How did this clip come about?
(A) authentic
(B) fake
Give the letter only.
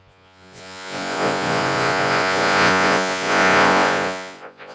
B